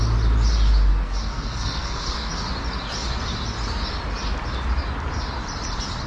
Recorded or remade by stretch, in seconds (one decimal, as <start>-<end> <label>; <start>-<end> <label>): 0.0-0.9 recorded; 0.9-2.3 remade; 2.3-6.1 recorded